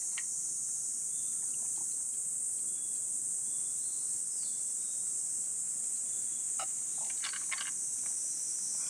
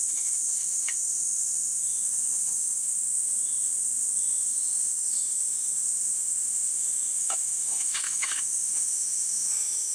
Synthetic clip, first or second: second